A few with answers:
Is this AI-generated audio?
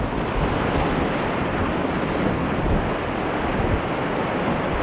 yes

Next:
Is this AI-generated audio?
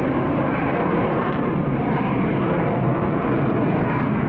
no